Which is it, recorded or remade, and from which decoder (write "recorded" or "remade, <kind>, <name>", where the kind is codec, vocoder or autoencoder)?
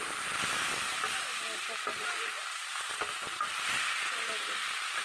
recorded